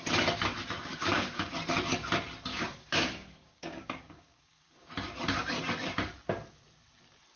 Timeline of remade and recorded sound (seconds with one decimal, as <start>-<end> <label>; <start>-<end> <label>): 0.0-0.9 recorded; 0.9-1.5 remade; 1.5-2.5 recorded; 2.5-4.9 remade; 4.9-7.4 recorded